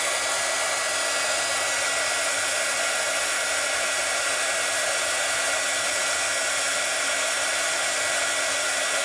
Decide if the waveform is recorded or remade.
recorded